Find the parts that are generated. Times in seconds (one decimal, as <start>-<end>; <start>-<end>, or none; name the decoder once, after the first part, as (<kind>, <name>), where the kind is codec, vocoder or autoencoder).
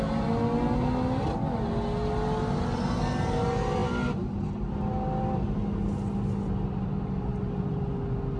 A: none